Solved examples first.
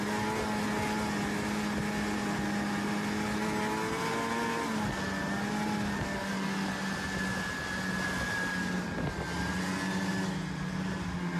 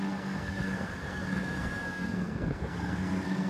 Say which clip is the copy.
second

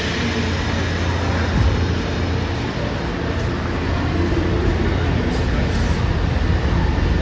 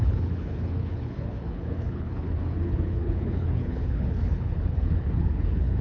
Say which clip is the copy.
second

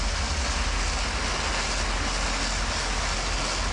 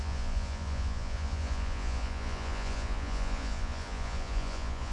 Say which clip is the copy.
second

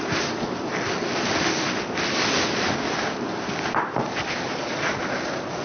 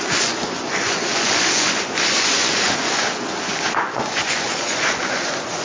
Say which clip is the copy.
second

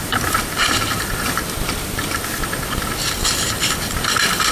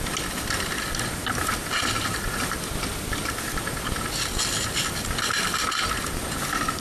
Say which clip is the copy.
first